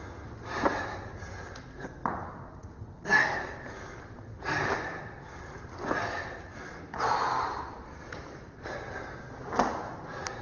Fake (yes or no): no